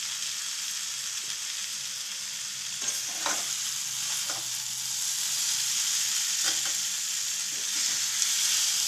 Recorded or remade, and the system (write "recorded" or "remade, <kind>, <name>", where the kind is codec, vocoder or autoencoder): recorded